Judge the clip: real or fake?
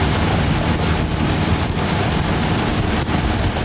fake